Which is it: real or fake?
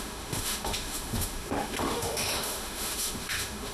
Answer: fake